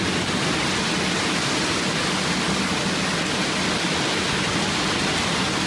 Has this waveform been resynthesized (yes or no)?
no